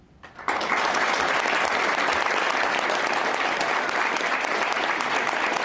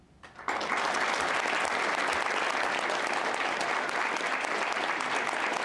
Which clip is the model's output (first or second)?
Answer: first